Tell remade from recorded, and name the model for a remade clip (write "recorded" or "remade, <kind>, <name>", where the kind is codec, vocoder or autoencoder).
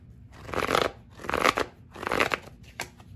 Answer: recorded